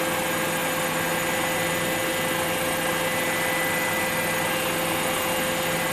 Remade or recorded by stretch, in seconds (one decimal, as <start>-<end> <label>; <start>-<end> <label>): 0.0-5.9 recorded